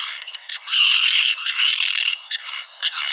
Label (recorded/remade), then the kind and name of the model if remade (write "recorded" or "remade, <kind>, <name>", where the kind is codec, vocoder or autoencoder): remade, codec, SNAC